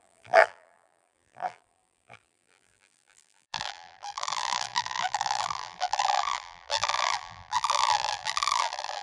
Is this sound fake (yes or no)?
yes